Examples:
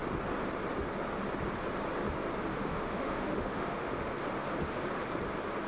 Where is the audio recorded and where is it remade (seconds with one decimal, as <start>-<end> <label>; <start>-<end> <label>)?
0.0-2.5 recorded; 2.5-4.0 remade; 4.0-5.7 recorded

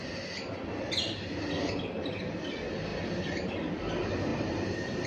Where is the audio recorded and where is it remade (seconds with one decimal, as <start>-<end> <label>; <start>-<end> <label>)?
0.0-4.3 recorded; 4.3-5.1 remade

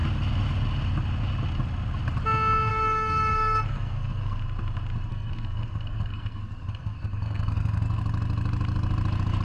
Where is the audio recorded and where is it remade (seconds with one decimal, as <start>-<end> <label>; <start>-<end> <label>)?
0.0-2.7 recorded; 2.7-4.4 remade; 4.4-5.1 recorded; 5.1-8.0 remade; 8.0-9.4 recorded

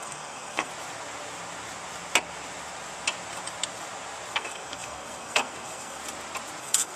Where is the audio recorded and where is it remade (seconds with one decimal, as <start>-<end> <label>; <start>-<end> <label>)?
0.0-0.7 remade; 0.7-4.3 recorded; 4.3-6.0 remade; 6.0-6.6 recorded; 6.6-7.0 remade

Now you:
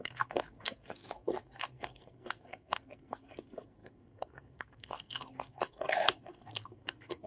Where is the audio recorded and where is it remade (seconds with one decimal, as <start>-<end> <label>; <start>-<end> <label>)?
0.0-7.3 remade

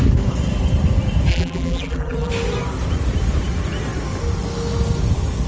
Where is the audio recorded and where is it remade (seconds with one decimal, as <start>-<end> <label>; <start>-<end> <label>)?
0.0-1.3 recorded; 1.3-2.3 remade; 2.3-5.5 recorded

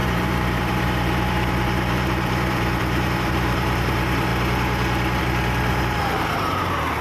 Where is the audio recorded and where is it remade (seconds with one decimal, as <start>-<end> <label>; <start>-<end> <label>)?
0.0-4.3 remade; 4.3-5.2 recorded; 5.2-7.0 remade

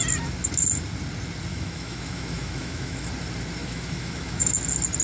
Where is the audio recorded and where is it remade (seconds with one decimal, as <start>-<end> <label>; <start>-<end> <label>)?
0.0-1.5 recorded; 1.5-3.1 remade; 3.1-3.6 recorded; 3.6-4.6 remade; 4.6-5.0 recorded